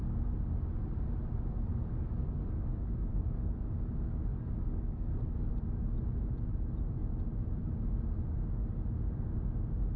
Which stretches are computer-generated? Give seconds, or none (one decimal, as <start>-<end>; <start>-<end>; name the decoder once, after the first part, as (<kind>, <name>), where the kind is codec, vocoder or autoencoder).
1.7-3.6 (codec, DAC); 4.3-5.5